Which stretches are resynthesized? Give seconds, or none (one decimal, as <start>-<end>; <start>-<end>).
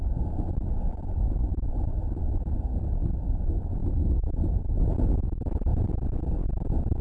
none